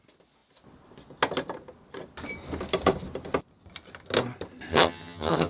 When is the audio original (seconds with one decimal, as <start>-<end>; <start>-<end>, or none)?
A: 0.0-4.7